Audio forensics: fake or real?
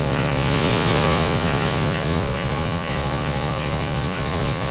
fake